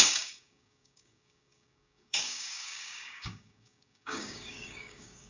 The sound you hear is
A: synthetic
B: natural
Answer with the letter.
A